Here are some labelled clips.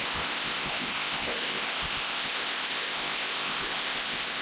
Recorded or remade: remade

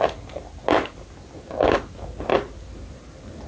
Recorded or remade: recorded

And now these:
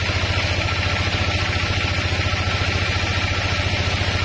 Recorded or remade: recorded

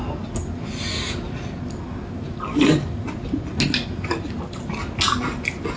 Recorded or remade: recorded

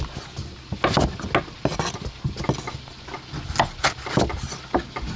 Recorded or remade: recorded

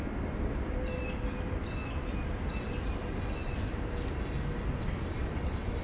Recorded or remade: recorded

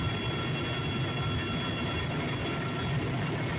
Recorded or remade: recorded